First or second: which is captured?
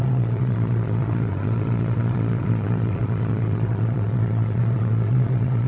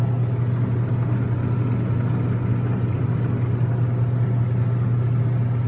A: second